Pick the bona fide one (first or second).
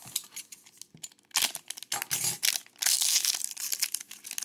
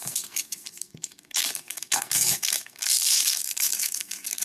first